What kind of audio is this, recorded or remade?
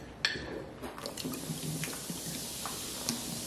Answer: recorded